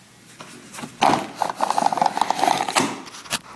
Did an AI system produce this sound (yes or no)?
no